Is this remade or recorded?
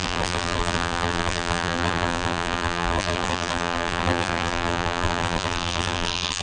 remade